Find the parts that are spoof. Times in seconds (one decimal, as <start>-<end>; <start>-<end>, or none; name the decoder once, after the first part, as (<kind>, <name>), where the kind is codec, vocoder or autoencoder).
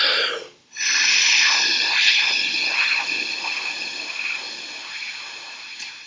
none